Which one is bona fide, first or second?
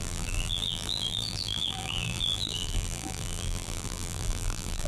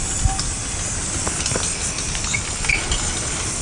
second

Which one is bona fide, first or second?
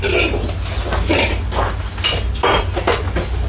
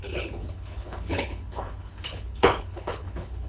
first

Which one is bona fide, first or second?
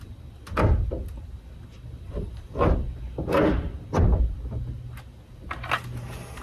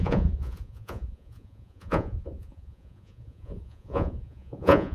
first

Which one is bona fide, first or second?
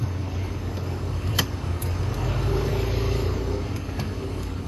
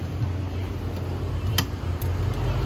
second